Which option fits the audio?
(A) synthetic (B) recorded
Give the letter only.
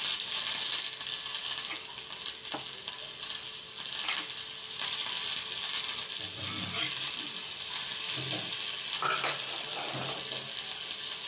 B